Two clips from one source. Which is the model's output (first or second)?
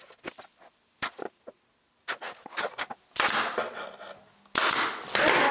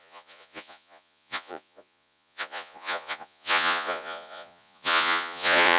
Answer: second